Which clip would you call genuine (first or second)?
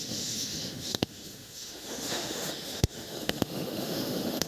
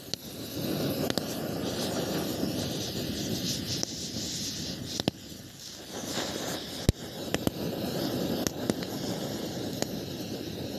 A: second